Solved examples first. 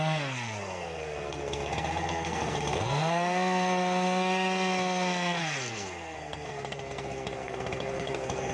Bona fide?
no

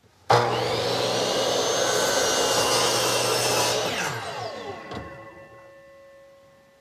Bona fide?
yes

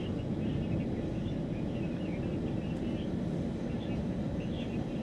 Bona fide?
yes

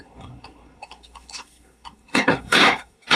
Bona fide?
no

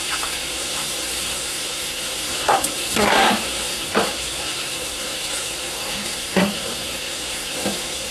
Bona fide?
no